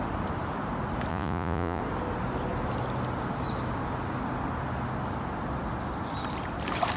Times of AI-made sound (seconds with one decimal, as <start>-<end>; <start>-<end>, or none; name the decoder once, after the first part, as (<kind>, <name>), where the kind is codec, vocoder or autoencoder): 1.1-1.8 (vocoder, Vocos)